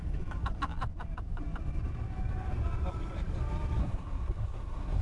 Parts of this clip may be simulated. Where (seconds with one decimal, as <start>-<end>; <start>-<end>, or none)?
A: 3.8-5.0